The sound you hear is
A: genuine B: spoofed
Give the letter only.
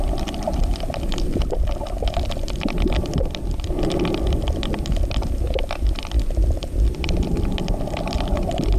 B